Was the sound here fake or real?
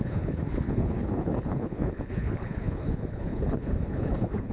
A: fake